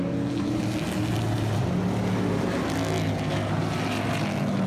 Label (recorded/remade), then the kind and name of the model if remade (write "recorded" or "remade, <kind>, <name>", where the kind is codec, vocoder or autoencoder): recorded